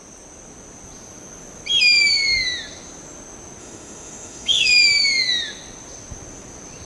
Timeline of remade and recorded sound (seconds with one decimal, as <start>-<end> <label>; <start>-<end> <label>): 0.0-3.6 recorded; 3.6-4.7 remade; 4.7-6.9 recorded